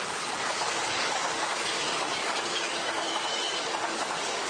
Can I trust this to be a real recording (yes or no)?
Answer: no